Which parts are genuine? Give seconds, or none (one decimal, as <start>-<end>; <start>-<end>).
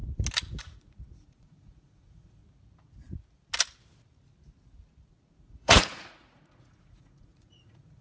0.0-0.6; 2.4-5.1